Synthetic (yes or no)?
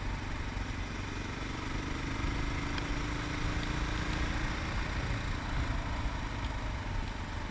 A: no